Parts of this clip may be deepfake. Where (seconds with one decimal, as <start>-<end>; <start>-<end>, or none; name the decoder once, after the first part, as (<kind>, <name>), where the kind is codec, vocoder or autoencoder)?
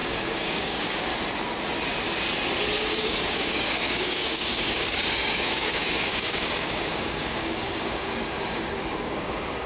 0.0-1.1 (codec, DAC); 2.8-9.7